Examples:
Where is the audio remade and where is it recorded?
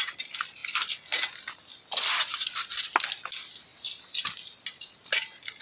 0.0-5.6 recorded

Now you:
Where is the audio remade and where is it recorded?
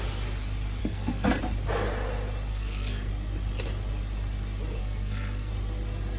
0.0-0.8 recorded; 0.8-1.4 remade; 1.4-2.5 recorded; 2.5-3.1 remade; 3.1-4.8 recorded; 4.8-5.5 remade; 5.5-6.2 recorded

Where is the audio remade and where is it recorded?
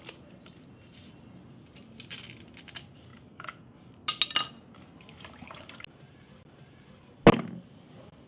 0.0-8.3 recorded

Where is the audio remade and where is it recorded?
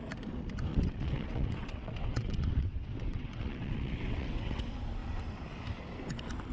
0.0-0.7 recorded; 0.7-4.6 remade; 4.6-6.5 recorded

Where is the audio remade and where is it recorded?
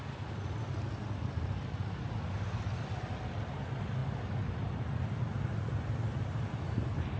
0.0-7.2 recorded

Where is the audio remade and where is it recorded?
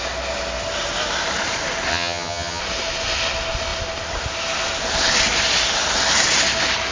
0.0-1.9 recorded; 1.9-2.6 remade; 2.6-6.9 recorded